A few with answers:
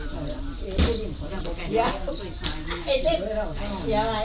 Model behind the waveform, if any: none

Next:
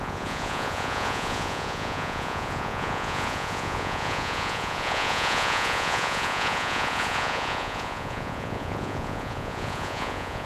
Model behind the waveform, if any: vocoder, Vocos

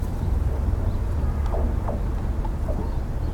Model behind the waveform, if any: none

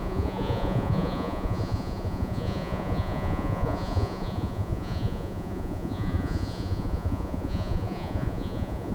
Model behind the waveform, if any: vocoder, Vocos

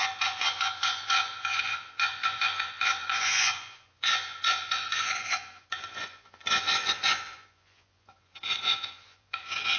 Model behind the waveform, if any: vocoder, Vocos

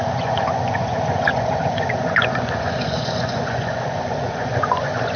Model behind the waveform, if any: vocoder, Vocos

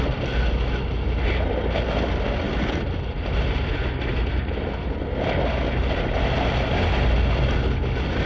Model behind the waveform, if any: none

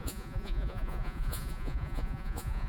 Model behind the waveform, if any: vocoder, Vocos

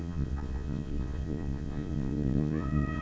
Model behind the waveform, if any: vocoder, Vocos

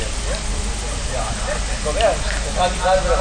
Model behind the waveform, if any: none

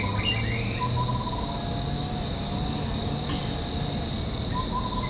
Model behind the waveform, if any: none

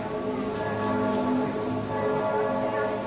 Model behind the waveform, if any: none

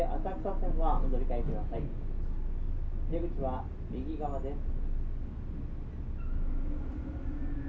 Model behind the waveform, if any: none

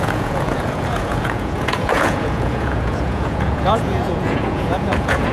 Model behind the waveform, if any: vocoder, Vocos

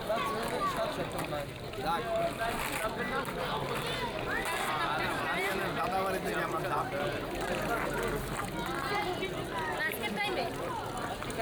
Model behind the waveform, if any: none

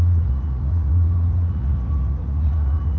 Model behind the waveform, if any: vocoder, Vocos